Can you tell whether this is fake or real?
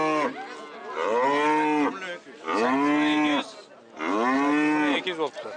real